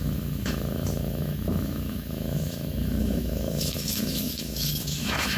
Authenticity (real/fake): fake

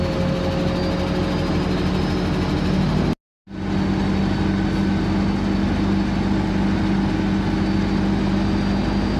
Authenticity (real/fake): real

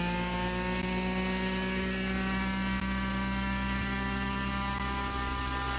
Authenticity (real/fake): real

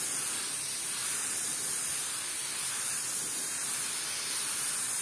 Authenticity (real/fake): real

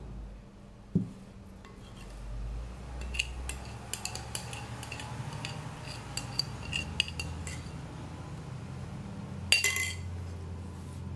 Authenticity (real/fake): real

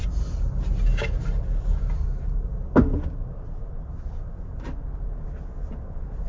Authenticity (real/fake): real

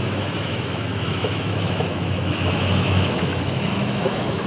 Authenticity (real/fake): fake